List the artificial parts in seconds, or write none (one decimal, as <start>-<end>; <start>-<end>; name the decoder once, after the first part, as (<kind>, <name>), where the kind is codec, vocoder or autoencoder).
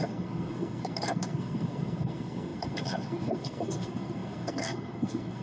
0.0-5.4 (codec, SNAC)